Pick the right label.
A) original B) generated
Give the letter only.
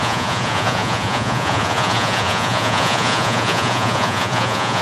B